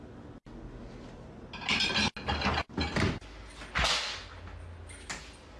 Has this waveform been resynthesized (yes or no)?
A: no